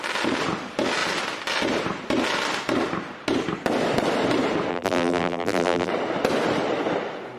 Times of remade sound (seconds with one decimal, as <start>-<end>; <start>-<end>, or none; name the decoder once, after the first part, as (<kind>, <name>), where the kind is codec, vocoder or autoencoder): 4.7-5.9 (vocoder, BigVGAN v2)